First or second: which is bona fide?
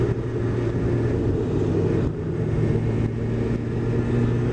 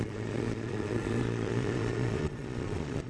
first